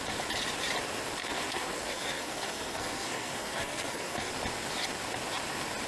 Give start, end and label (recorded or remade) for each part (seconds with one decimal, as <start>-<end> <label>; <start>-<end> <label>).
0.0-1.2 recorded; 1.2-4.3 remade; 4.3-5.9 recorded